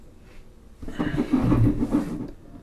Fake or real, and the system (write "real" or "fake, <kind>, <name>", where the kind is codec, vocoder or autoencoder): real